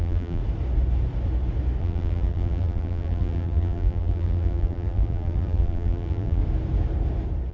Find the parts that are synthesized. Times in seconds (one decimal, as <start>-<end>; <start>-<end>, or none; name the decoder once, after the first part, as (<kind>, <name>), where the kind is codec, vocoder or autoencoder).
0.0-0.4 (vocoder, BigVGAN v2); 1.8-6.4